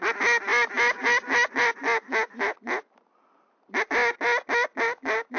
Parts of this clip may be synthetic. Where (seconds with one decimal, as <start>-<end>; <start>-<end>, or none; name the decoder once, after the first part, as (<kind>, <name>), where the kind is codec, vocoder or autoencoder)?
none